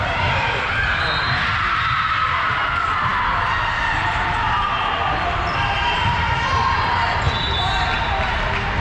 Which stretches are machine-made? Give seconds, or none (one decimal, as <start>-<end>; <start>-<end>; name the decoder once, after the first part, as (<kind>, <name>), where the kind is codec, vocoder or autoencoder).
none